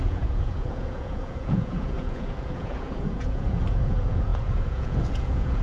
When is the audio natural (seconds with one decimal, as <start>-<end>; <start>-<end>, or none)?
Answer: none